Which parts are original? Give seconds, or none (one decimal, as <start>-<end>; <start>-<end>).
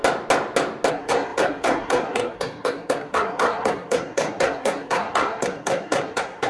0.0-0.9